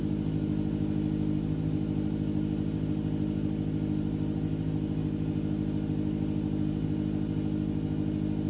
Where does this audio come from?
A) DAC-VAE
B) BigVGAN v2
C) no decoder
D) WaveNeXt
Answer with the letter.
C